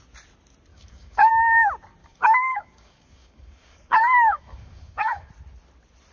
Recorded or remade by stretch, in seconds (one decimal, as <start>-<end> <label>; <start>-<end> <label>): 0.0-0.7 recorded; 0.7-1.3 remade; 1.3-2.0 recorded; 2.0-5.3 remade; 5.3-6.1 recorded